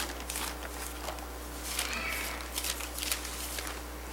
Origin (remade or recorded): recorded